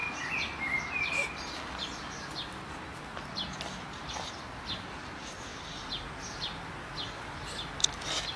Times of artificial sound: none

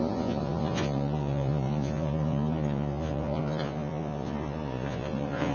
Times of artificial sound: 0.0-5.5 (vocoder, Vocos)

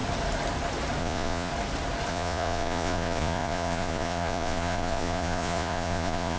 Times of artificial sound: 1.0-1.5 (vocoder, Vocos); 2.1-6.4

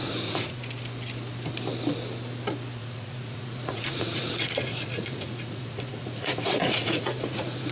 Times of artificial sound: 0.0-0.6 (vocoder, Vocos); 2.8-7.7

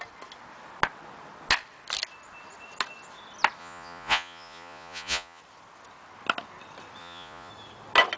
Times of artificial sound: 3.6-5.4 (vocoder, Vocos); 7.0-7.5